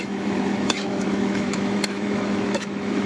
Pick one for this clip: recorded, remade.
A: remade